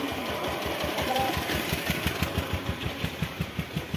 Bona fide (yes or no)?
no